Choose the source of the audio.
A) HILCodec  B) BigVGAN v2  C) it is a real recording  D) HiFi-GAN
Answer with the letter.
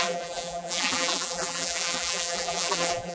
B